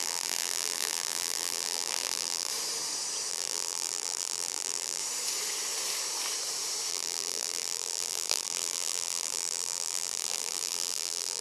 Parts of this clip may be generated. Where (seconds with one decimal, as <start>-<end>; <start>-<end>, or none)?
0.0-2.5; 3.3-5.0; 6.9-11.4